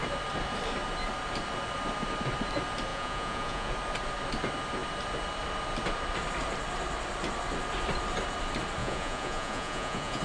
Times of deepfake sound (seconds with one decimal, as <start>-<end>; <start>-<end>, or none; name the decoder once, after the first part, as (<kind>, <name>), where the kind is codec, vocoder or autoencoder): 2.9-3.7 (vocoder, Vocos); 8.8-10.2